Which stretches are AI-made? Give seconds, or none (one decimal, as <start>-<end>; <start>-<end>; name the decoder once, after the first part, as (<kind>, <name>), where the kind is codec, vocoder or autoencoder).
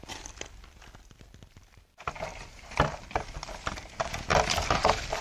2.3-3.9 (vocoder, BigVGAN v2); 4.3-5.2